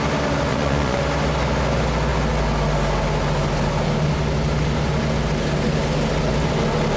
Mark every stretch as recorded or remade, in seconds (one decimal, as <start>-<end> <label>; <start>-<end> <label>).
0.0-0.5 recorded; 0.5-1.0 remade; 1.0-7.0 recorded